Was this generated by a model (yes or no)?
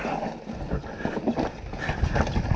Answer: no